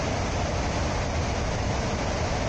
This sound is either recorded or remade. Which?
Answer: recorded